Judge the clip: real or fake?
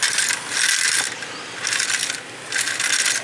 real